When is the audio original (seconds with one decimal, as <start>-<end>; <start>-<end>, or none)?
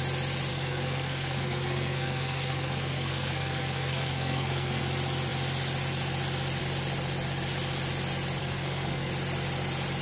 0.0-0.5; 4.8-8.4; 9.1-10.0